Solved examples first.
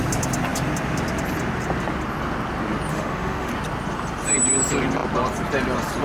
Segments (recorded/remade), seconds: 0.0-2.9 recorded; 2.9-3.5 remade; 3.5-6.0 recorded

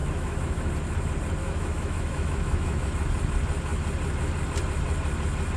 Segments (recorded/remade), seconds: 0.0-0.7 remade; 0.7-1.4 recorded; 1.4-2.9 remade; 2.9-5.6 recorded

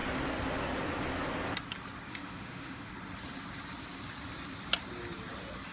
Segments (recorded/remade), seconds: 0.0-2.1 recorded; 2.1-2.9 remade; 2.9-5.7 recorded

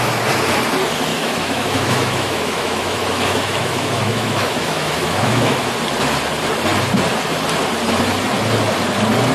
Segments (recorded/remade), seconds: 0.0-1.1 recorded; 1.1-5.7 remade; 5.7-9.3 recorded

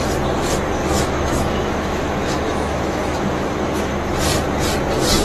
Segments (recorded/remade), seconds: 0.0-0.8 recorded; 0.8-3.9 remade; 3.9-5.2 recorded